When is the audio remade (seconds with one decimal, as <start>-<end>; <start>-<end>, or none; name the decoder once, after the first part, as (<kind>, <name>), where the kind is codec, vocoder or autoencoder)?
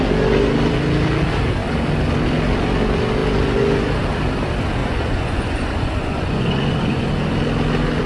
4.8-7.1 (vocoder, Vocos)